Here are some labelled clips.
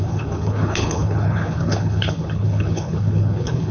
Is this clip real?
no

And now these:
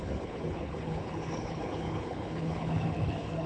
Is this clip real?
no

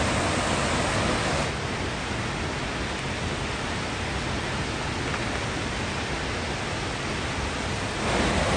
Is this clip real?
yes